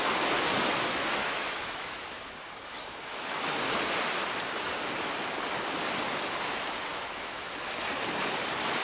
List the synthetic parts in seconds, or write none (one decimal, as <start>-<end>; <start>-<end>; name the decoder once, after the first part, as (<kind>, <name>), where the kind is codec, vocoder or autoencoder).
1.2-3.6 (autoencoder, DAC-VAE); 6.9-7.5